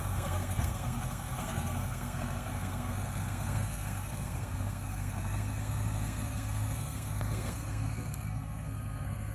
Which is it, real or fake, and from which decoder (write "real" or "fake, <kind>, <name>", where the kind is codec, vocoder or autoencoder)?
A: fake, codec, SNAC